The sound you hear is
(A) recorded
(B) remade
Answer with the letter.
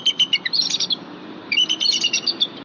A